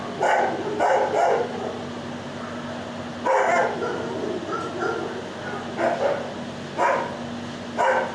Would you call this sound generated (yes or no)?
no